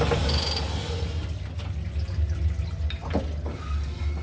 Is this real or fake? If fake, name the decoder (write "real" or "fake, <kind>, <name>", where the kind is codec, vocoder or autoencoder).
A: real